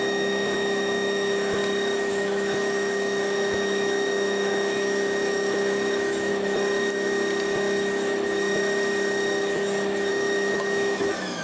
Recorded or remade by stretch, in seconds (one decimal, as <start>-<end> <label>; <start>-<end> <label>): 0.0-1.6 remade; 1.6-2.1 recorded; 2.1-6.3 remade; 6.3-10.1 recorded; 10.1-11.4 remade